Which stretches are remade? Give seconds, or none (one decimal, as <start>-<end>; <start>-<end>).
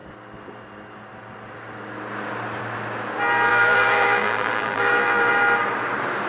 3.5-5.3